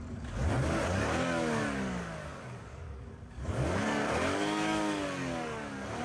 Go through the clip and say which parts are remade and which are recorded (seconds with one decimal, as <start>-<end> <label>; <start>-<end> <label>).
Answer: 0.0-6.0 remade